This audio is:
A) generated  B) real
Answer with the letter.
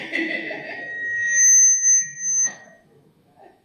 A